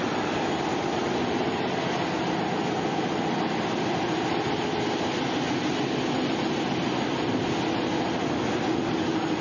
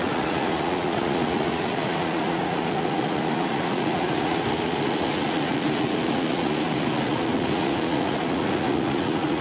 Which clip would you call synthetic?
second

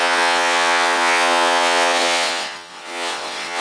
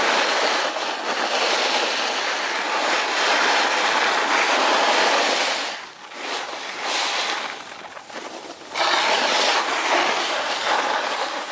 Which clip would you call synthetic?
first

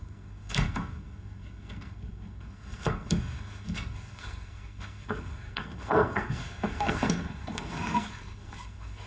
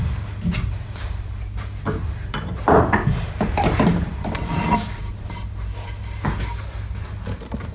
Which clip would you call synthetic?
first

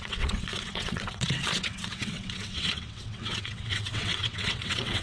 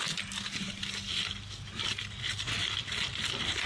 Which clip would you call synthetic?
first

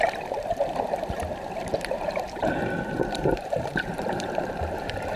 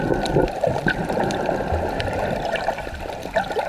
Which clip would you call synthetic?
first